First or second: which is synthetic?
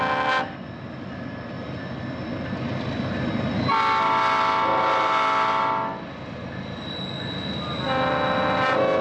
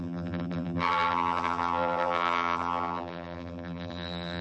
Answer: second